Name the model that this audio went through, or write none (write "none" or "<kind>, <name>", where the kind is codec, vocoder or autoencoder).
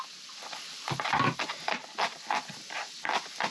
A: none